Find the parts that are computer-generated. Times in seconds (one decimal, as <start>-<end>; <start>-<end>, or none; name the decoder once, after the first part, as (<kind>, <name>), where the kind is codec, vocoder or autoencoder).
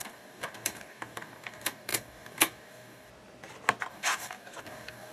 0.0-3.1 (codec, DAC); 3.9-5.1